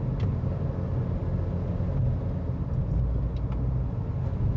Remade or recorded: recorded